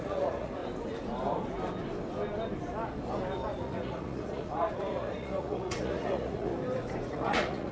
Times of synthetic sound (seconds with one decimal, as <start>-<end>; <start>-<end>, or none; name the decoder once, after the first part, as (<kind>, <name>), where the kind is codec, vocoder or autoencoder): 0.0-0.6 (vocoder, Vocos); 3.6-6.5; 7.1-7.7